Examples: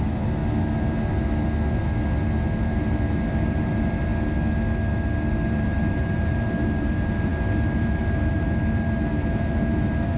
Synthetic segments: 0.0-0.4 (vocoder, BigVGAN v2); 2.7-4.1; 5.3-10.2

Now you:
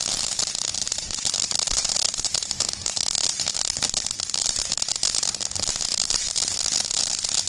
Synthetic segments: 0.8-5.3 (vocoder, BigVGAN v2); 5.9-6.4

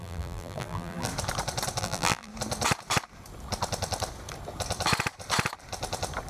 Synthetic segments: 0.0-1.1 (vocoder, BigVGAN v2); 1.8-2.3

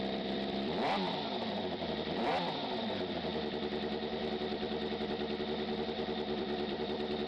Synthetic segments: 0.0-2.3 (vocoder, BigVGAN v2); 2.8-7.3

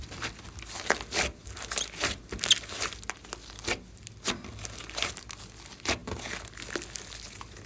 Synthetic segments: none

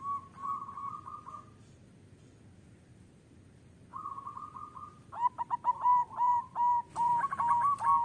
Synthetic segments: 3.9-7.2 (vocoder, BigVGAN v2)